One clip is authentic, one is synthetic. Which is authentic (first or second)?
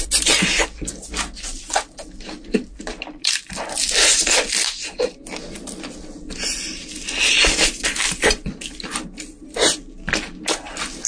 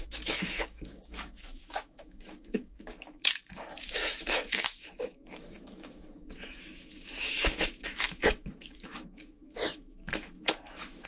first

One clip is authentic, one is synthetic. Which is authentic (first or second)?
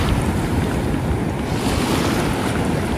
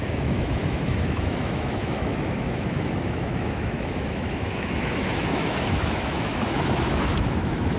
first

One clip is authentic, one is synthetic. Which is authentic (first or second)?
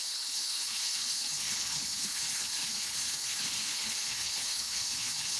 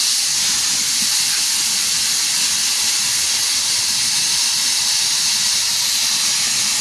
second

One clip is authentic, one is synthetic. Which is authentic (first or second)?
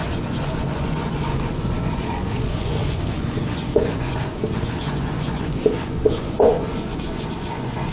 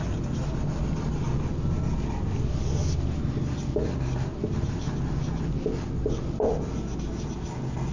second